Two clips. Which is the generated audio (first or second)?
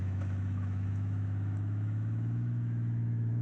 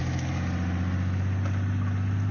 first